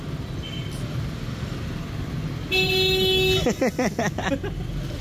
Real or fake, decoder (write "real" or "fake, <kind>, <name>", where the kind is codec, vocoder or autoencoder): real